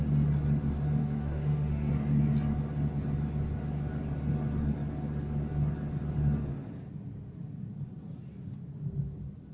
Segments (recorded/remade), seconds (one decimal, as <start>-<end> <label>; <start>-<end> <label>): 0.0-1.0 recorded; 1.0-1.9 remade; 1.9-9.5 recorded